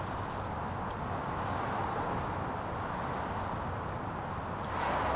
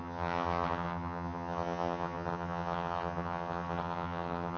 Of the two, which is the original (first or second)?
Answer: first